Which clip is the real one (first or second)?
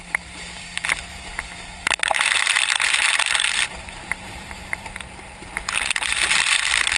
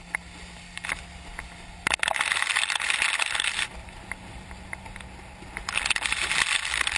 second